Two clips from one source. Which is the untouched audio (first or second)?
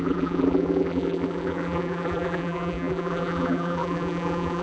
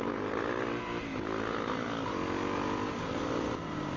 second